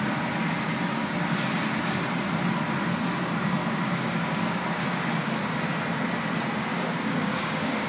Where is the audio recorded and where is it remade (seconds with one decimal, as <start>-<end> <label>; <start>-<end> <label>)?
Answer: 0.0-3.6 recorded; 3.6-5.1 remade; 5.1-6.7 recorded; 6.7-7.9 remade